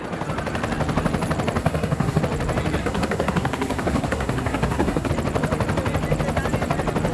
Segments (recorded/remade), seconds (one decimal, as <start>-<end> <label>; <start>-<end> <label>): 0.0-1.6 recorded; 1.6-2.2 remade; 2.2-2.8 recorded; 2.8-5.1 remade; 5.1-7.1 recorded